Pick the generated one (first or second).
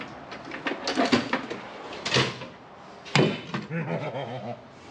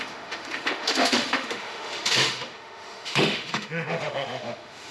second